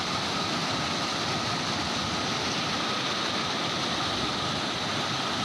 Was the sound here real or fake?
real